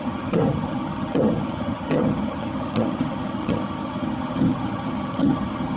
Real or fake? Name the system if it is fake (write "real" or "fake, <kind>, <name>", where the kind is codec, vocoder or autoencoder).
fake, vocoder, HiFi-GAN